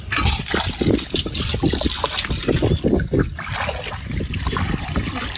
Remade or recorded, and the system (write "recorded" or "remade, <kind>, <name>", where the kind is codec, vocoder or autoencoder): recorded